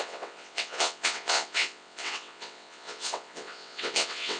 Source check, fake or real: fake